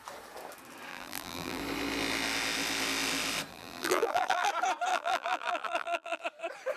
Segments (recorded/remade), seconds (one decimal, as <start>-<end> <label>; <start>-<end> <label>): 0.0-0.9 recorded; 0.9-1.6 remade; 1.6-3.5 recorded; 3.5-4.5 remade; 4.5-4.9 recorded; 4.9-6.2 remade; 6.2-6.8 recorded